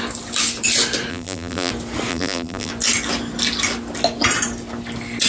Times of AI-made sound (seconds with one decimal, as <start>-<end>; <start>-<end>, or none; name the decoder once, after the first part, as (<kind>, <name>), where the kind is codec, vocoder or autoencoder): 1.1-1.7 (vocoder, BigVGAN v2); 2.1-2.7